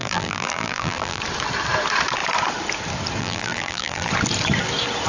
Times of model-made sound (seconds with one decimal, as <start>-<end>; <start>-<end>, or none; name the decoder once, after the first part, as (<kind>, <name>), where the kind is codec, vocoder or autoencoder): 0.0-1.2 (vocoder, BigVGAN v2); 3.2-4.1